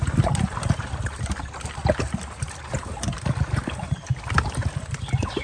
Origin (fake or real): real